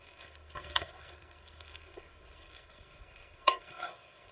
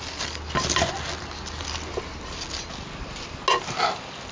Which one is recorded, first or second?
second